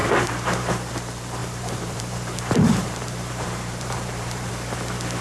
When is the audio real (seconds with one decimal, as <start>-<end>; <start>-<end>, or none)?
0.9-1.4; 4.5-5.2